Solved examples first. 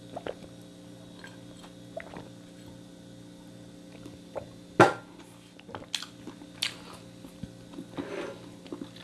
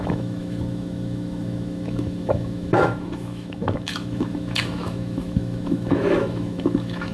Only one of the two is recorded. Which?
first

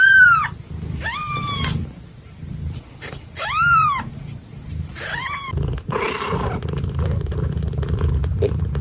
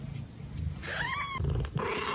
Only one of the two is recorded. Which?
second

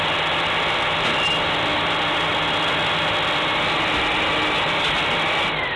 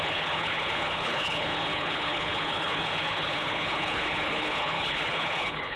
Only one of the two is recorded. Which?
first